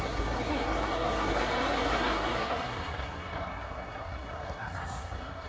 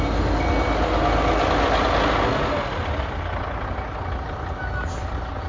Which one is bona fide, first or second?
second